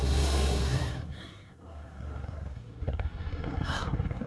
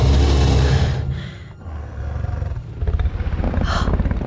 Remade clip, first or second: first